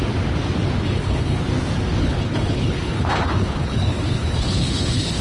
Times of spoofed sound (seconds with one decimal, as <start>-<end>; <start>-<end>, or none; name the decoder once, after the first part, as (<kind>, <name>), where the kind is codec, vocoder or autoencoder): 0.8-1.4 (codec, HILCodec); 2.0-5.2